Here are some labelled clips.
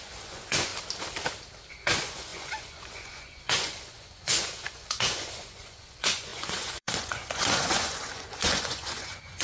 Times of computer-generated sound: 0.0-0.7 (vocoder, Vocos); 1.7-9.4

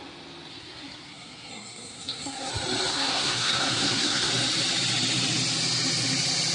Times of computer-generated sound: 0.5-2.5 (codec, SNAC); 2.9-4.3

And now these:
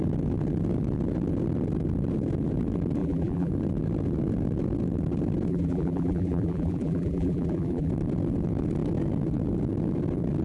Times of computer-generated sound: 3.0-3.5 (vocoder, BigVGAN v2); 5.5-7.9

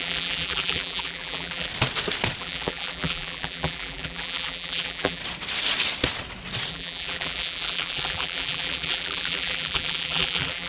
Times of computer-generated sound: 0.0-1.7 (vocoder, BigVGAN v2); 2.4-5.2; 6.7-10.7

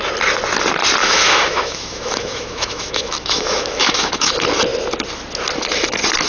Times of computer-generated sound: 1.0-4.3 (autoencoder, DAC-VAE)